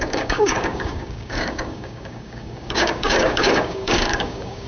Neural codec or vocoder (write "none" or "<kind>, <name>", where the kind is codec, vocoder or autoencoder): codec, DAC